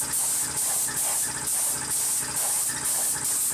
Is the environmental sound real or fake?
real